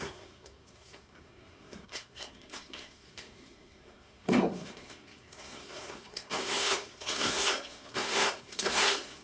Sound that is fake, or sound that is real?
fake